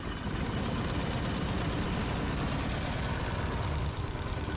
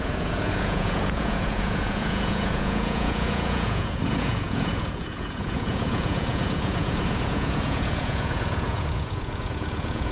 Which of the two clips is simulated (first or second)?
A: second